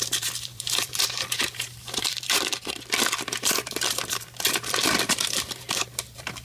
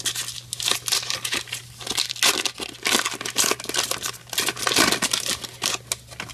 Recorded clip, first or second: second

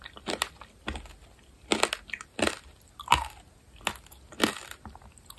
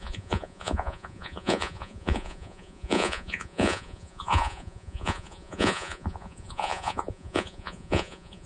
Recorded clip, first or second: first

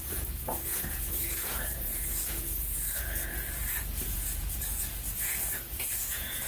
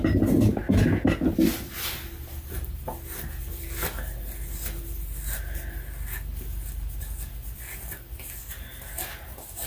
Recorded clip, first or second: second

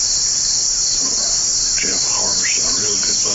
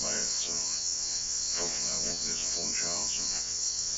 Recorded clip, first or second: first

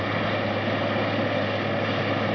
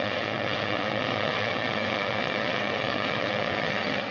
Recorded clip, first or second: first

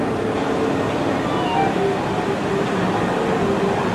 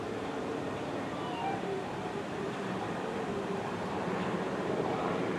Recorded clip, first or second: first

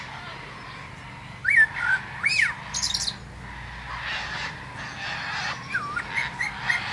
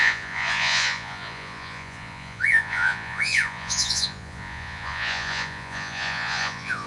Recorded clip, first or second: first